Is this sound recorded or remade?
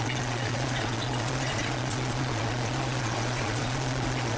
remade